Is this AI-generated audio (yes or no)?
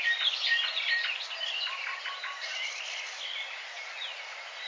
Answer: no